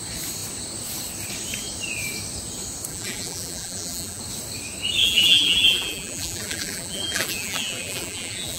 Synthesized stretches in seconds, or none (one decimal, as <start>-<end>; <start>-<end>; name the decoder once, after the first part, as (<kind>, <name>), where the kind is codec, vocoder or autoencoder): 2.9-4.2 (vocoder, BigVGAN v2); 5.0-8.6